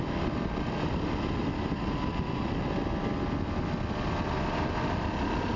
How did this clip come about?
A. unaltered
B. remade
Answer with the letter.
A